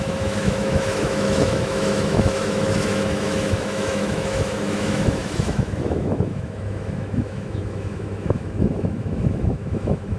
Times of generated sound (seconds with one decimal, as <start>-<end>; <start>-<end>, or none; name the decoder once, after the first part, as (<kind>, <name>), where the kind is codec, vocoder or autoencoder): 0.0-10.2 (autoencoder, DAC-VAE)